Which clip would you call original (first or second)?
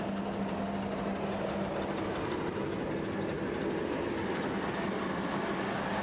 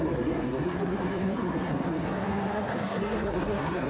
first